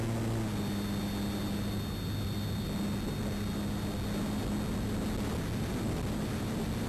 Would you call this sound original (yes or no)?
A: yes